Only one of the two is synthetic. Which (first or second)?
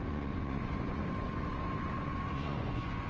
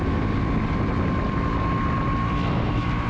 first